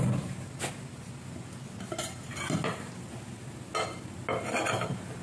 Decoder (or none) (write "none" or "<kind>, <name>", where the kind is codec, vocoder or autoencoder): none